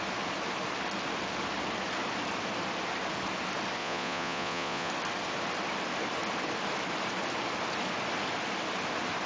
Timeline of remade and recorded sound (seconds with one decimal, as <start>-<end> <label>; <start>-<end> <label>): 0.0-3.8 recorded; 3.8-4.9 remade; 4.9-9.3 recorded